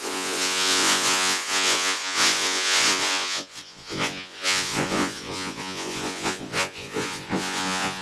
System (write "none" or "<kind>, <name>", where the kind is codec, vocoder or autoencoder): vocoder, Vocos